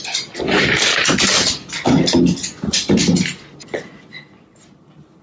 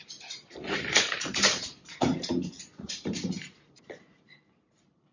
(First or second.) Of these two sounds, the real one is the first